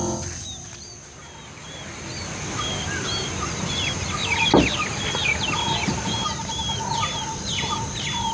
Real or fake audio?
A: real